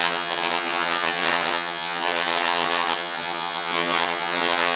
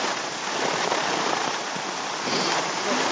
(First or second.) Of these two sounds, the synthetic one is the first